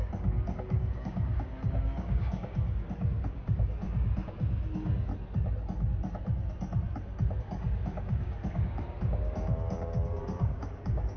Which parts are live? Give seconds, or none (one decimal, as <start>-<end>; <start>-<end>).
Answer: 5.1-7.4